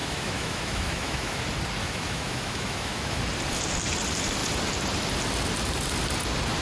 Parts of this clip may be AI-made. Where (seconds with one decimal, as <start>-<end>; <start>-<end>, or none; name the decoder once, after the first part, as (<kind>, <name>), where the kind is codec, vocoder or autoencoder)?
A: 0.0-1.4 (autoencoder, DAC-VAE); 1.8-3.2